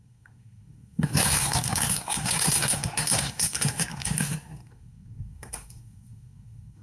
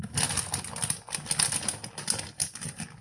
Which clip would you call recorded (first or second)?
second